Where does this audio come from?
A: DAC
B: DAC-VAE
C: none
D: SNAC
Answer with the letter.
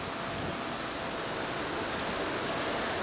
C